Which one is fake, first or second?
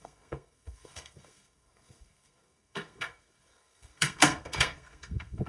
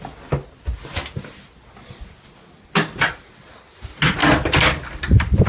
first